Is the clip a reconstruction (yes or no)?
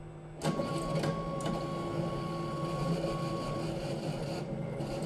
no